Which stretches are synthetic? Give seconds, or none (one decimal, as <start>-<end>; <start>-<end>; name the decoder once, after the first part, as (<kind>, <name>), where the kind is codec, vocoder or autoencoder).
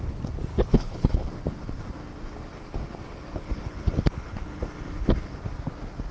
0.5-1.3 (codec, HILCodec); 3.6-4.6